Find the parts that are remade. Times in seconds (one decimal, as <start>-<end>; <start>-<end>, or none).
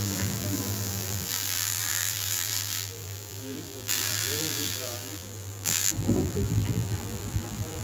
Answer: 0.0-7.8